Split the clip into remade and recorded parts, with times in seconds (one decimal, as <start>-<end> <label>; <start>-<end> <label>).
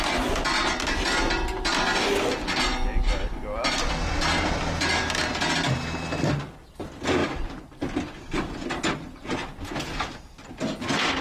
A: 0.0-11.2 recorded